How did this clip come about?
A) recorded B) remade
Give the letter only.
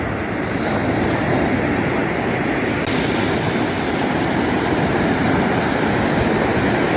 A